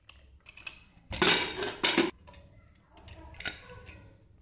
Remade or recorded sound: recorded